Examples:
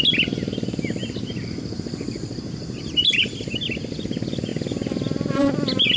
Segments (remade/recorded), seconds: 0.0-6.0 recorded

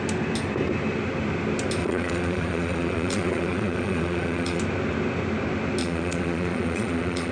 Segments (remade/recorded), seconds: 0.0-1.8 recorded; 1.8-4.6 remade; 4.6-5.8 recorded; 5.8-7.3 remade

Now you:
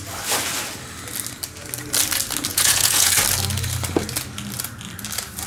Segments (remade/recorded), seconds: 0.0-2.5 recorded; 2.5-3.1 remade; 3.1-5.5 recorded

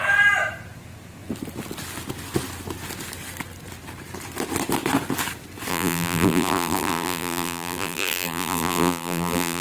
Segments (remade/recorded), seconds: 0.0-5.7 recorded; 5.7-9.6 remade

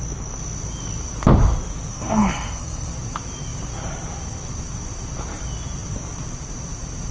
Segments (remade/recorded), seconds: 0.0-1.9 recorded; 1.9-2.9 remade; 2.9-7.1 recorded

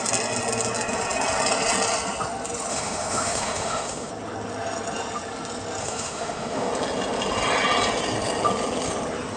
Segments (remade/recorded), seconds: 0.0-2.7 recorded; 2.7-4.1 remade; 4.1-5.8 recorded; 5.8-6.7 remade; 6.7-9.4 recorded

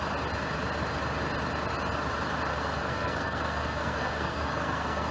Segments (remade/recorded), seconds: 0.0-2.5 recorded; 2.5-5.1 remade